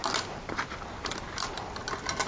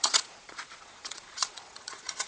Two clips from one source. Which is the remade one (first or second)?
second